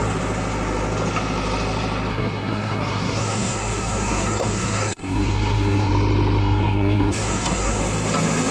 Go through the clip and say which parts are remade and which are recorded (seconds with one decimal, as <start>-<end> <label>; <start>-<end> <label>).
0.0-2.1 recorded; 2.1-5.9 remade; 5.9-6.4 recorded; 6.4-7.8 remade; 7.8-8.5 recorded